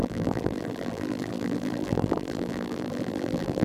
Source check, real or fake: fake